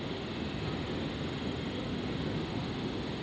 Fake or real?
real